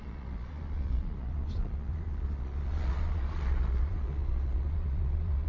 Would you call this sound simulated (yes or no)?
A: yes